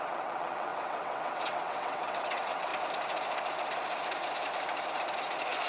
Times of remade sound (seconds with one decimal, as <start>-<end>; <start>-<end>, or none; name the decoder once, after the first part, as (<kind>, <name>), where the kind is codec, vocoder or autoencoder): 0.0-2.7 (vocoder, WaveNeXt)